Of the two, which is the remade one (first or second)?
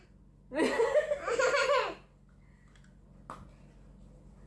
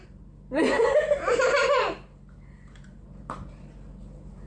second